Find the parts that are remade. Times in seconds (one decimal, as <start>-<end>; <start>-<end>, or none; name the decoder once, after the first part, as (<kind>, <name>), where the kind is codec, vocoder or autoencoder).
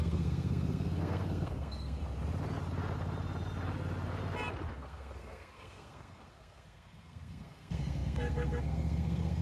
0.0-2.0 (codec, SNAC); 4.7-9.4